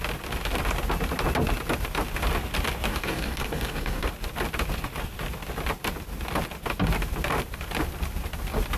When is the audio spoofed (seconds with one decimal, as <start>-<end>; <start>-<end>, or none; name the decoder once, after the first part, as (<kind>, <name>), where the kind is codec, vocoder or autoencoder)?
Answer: 2.9-4.1 (codec, DAC)